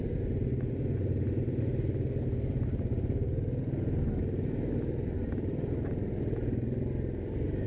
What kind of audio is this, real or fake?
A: real